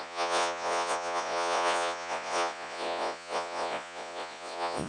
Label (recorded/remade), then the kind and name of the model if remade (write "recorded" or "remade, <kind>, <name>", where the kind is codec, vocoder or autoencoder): remade, vocoder, Vocos